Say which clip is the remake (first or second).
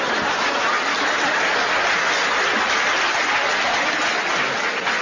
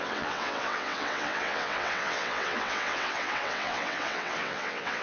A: second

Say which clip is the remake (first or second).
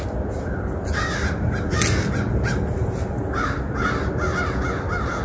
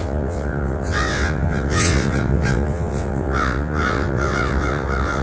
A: second